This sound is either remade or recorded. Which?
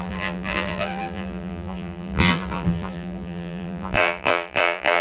remade